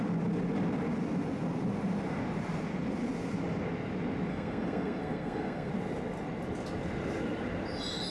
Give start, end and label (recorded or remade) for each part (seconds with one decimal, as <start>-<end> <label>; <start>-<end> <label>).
0.0-4.3 recorded; 4.3-5.7 remade; 5.7-8.1 recorded